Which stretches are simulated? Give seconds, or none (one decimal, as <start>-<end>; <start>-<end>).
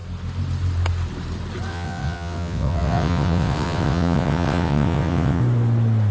1.7-5.4